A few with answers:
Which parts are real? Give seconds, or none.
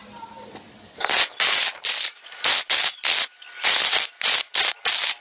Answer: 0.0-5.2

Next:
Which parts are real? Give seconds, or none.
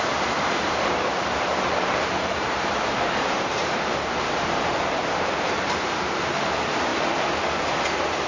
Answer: 6.9-7.7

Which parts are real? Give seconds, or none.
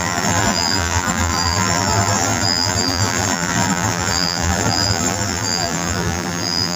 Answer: none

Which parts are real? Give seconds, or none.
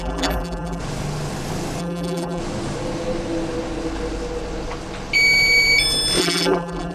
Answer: 0.8-1.8; 2.4-6.2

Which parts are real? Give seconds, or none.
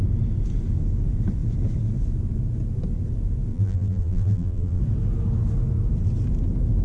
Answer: 0.0-3.5; 4.8-6.8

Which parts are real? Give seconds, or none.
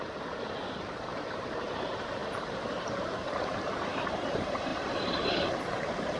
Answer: none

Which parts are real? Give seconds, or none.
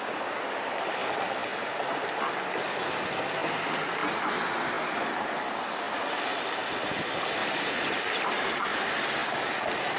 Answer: 0.0-1.5; 2.1-7.4; 8.6-10.0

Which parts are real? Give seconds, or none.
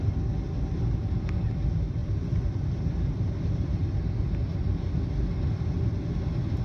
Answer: 0.0-6.6